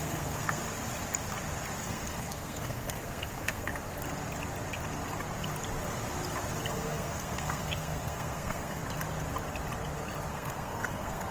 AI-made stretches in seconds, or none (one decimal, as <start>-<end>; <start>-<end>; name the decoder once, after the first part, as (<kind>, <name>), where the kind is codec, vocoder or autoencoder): 0.0-0.6 (codec, SNAC); 1.8-3.7; 6.7-8.8; 10.3-11.3